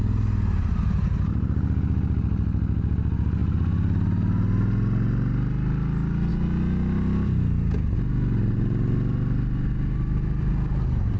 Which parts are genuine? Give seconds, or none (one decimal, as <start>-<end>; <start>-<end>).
0.0-11.2